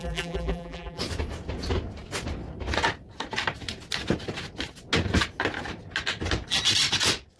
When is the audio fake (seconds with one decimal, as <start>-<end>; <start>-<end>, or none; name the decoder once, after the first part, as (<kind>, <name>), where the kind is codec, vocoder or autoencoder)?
0.0-1.0 (vocoder, BigVGAN v2)